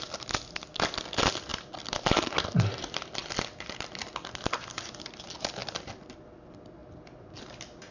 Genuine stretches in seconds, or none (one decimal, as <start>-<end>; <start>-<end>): 0.0-5.6; 6.2-7.9